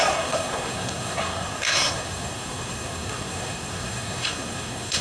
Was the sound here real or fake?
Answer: fake